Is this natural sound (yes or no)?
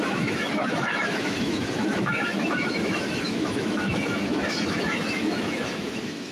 no